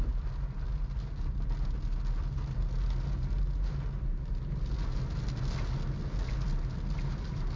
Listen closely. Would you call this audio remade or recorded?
recorded